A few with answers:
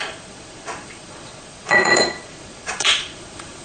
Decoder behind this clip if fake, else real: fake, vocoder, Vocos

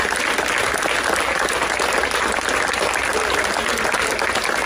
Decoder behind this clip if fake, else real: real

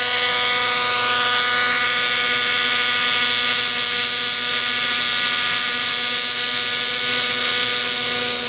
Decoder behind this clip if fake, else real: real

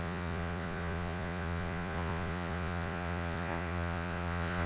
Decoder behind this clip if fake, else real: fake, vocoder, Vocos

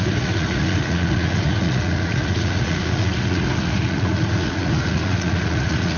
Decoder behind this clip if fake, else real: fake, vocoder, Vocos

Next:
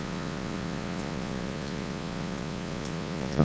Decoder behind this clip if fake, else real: fake, vocoder, Vocos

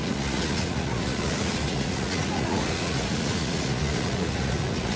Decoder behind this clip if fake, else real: fake, vocoder, Vocos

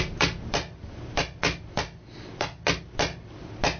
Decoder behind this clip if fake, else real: real